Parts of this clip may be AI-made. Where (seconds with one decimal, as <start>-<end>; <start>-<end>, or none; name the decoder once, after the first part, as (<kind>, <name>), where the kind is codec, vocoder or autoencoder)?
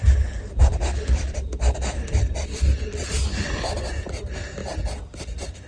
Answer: none